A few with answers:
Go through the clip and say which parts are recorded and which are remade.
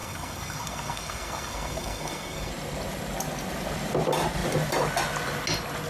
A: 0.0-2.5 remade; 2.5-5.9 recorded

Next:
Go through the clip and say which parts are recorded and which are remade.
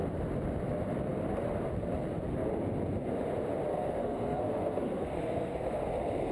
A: 0.0-3.7 recorded; 3.7-5.8 remade; 5.8-6.3 recorded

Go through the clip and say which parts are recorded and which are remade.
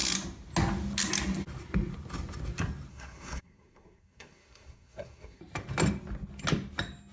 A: 0.0-2.9 recorded; 2.9-5.4 remade; 5.4-7.1 recorded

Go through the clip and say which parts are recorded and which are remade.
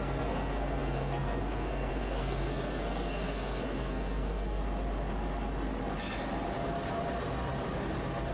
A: 0.0-4.6 remade; 4.6-8.3 recorded